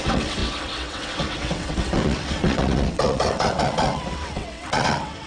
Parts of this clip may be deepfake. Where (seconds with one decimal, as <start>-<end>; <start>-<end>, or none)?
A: 0.0-5.3